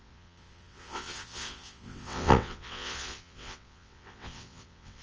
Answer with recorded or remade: remade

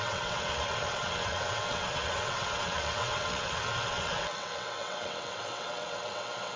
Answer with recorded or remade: remade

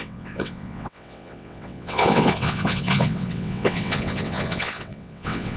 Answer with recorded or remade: remade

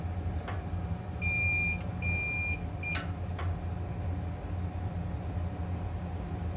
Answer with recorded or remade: recorded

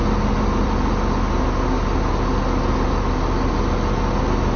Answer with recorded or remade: recorded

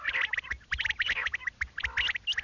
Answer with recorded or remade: recorded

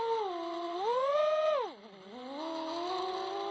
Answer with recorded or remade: recorded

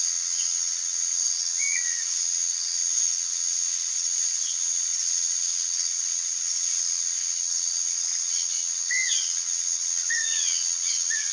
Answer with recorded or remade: remade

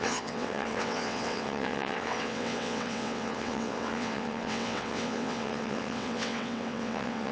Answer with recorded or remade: remade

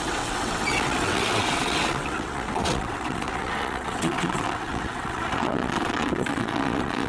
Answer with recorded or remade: remade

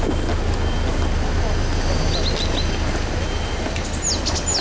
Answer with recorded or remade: recorded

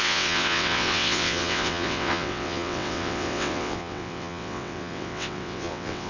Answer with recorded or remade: remade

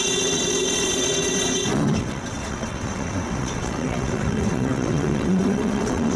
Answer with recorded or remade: remade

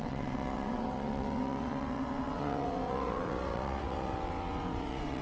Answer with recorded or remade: remade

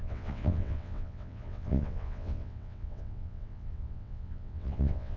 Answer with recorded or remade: remade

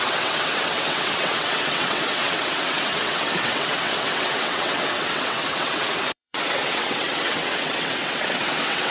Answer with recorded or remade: remade